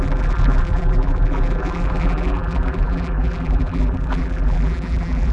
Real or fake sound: fake